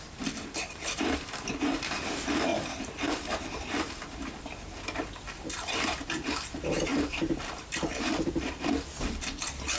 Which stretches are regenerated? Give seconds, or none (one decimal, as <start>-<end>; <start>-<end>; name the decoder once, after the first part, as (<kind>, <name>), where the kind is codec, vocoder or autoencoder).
0.0-9.8 (vocoder, BigVGAN v2)